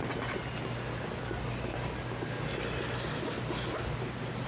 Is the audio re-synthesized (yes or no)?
no